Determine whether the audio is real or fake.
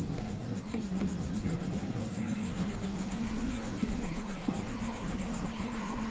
fake